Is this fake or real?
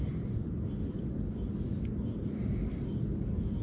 real